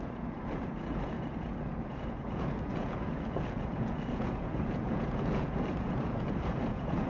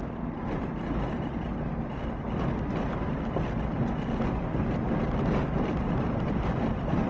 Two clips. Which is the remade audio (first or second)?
first